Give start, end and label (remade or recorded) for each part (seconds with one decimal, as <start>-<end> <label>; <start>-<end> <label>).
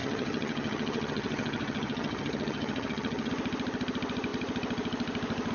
0.0-3.3 remade; 3.3-5.5 recorded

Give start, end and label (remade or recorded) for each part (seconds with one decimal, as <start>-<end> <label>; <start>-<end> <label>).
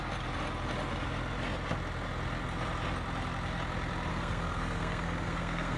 0.0-4.1 recorded; 4.1-5.8 remade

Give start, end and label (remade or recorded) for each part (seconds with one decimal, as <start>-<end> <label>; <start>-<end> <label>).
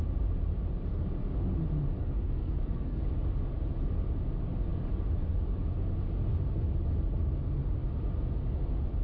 0.0-1.9 recorded; 1.9-3.0 remade; 3.0-9.0 recorded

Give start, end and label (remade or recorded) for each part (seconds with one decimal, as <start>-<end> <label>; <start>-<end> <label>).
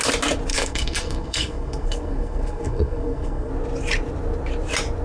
0.0-0.5 recorded; 0.5-3.5 remade; 3.5-5.0 recorded